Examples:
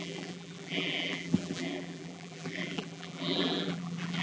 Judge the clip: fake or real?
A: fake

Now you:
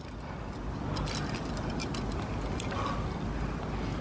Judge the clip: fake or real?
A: real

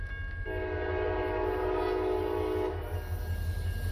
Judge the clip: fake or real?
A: real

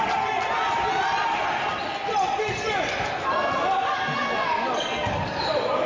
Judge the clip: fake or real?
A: real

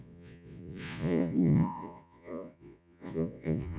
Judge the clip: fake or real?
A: fake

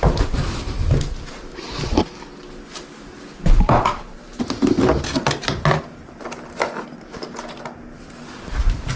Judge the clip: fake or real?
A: real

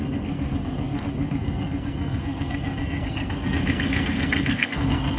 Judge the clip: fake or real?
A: fake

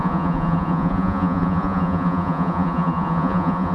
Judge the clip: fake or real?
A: fake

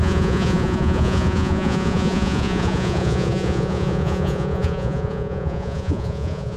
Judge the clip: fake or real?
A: fake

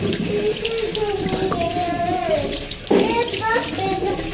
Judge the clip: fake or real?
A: real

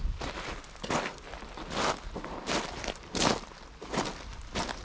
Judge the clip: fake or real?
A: real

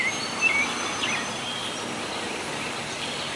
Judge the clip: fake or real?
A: real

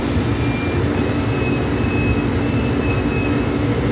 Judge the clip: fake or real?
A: real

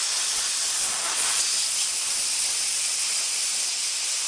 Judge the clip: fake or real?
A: real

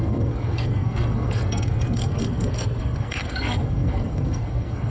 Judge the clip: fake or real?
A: fake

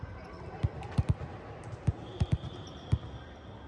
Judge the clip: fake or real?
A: fake